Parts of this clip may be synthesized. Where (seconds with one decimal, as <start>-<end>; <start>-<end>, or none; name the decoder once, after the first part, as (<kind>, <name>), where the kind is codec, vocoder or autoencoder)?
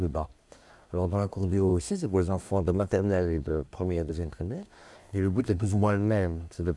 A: 0.0-6.8 (codec, SNAC)